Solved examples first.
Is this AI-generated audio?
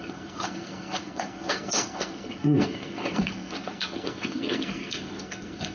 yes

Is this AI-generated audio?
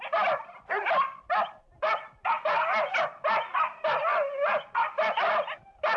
no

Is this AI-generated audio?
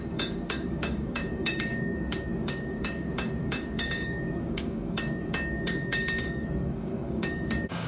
yes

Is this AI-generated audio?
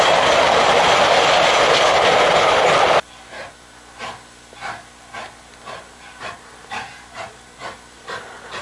no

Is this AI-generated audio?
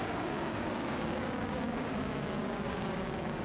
yes